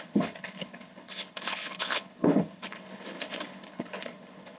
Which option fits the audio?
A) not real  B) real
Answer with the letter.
A